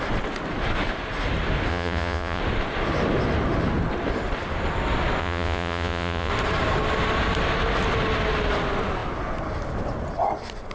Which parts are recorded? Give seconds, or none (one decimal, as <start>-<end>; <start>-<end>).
0.0-1.7; 2.4-5.2; 6.3-10.7